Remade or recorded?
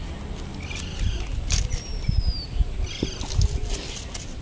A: recorded